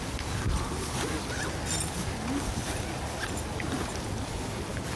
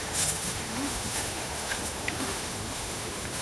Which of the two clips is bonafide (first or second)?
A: first